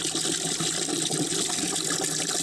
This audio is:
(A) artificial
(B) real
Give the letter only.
B